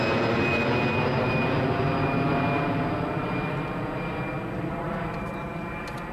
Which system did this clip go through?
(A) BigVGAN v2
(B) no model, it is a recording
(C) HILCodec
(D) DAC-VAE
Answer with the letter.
B